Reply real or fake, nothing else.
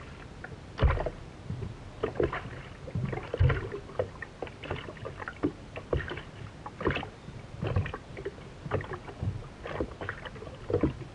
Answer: real